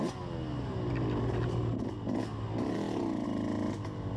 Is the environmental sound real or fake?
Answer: real